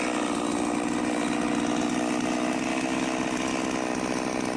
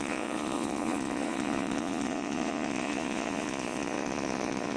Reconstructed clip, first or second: second